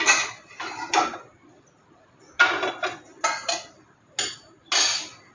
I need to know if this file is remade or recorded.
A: recorded